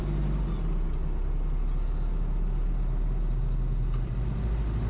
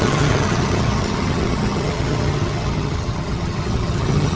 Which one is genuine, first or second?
first